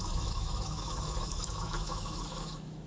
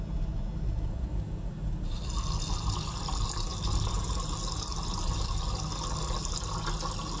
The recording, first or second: second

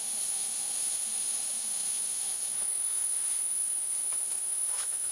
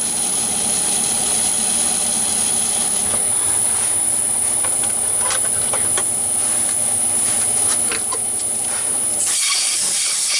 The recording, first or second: second